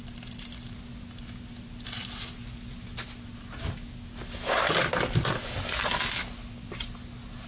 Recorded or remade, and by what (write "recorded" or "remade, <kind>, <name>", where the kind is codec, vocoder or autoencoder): recorded